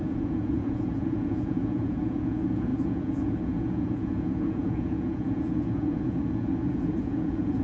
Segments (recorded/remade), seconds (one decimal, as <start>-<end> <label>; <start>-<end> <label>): 0.0-7.6 remade